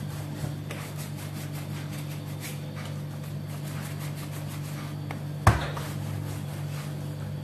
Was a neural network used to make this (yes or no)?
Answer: no